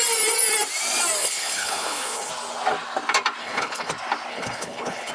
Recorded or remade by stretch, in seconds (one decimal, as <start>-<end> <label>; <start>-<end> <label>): 0.0-1.2 recorded; 1.2-2.3 remade; 2.3-3.4 recorded; 3.4-3.9 remade; 3.9-4.3 recorded; 4.3-5.1 remade